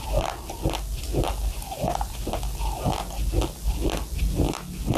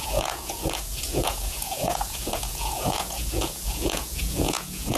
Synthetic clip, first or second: second